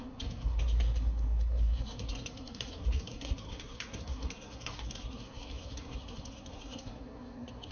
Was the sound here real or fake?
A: fake